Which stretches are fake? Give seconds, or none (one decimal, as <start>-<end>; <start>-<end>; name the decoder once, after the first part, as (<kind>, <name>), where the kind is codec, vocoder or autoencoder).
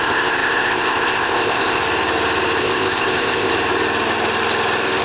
0.0-1.8 (codec, ZipCodec); 2.6-3.5